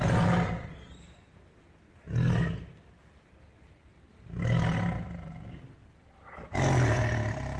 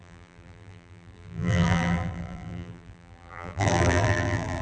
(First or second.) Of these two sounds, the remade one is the second